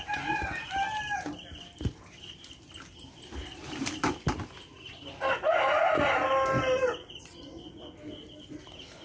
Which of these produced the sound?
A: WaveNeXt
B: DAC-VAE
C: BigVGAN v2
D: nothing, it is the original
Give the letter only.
D